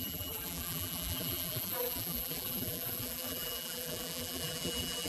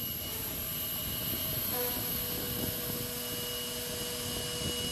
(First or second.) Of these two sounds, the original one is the second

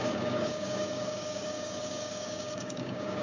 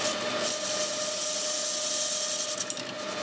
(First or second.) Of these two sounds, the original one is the second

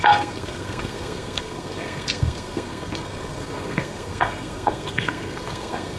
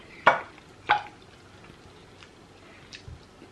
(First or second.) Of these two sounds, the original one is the second